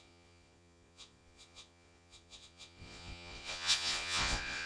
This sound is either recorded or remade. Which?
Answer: remade